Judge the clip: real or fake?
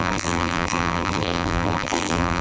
fake